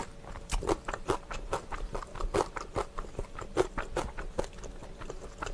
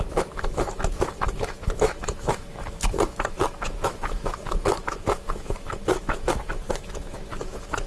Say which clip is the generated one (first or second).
second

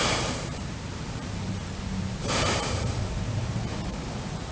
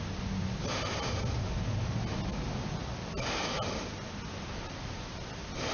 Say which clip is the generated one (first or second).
first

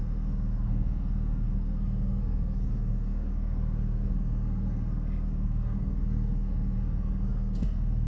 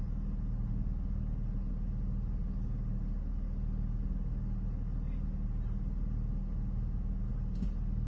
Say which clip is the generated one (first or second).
first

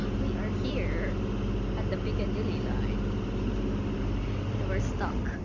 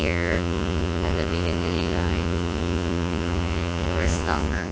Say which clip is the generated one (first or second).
second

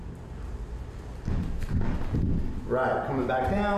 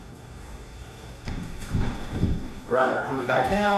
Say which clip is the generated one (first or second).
second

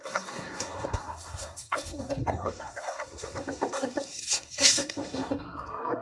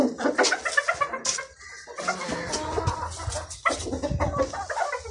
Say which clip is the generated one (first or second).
first